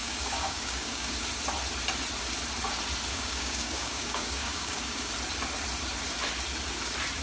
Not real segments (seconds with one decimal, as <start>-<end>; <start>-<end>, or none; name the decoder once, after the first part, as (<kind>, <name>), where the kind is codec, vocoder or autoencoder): 0.0-1.3 (codec, DAC); 3.1-5.1